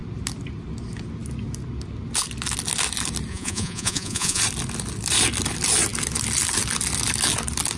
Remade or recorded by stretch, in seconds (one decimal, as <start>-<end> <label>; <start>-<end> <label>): 0.0-3.3 recorded; 3.3-4.4 remade; 4.4-7.8 recorded